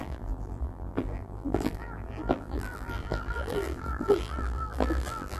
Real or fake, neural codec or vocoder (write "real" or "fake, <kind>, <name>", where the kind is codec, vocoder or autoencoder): fake, vocoder, BigVGAN v2